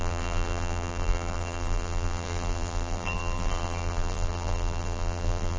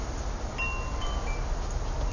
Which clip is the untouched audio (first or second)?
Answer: second